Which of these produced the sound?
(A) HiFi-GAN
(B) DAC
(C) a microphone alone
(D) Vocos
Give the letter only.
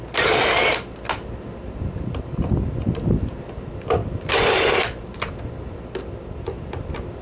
C